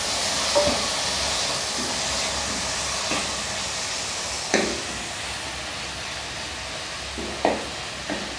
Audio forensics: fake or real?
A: real